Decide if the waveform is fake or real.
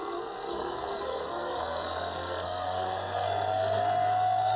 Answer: fake